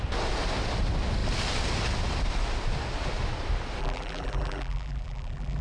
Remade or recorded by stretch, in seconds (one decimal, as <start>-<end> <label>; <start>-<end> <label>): 0.0-3.8 recorded; 3.8-5.6 remade

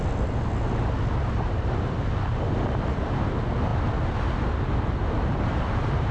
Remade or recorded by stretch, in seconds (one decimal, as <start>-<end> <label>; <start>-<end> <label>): 0.0-6.1 recorded